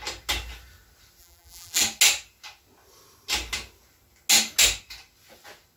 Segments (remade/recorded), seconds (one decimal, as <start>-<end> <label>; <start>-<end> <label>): 0.0-1.2 recorded; 1.2-1.8 remade; 1.8-5.8 recorded